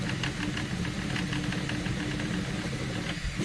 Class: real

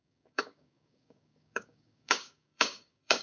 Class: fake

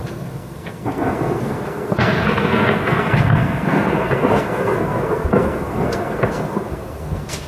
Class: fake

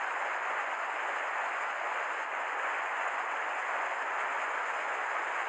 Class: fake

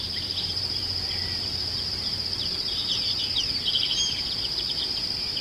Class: fake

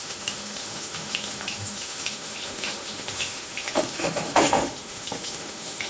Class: fake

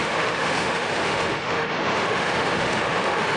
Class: fake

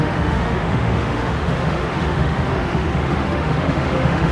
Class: fake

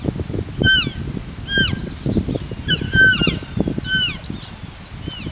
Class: real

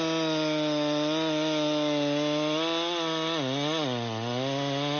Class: real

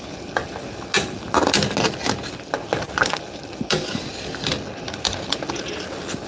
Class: real